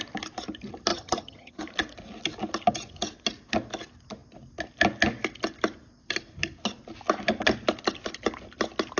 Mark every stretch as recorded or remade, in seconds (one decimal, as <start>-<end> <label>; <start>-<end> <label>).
0.0-0.9 recorded; 0.9-1.6 remade; 1.6-9.0 recorded